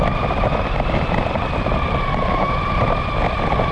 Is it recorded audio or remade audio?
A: remade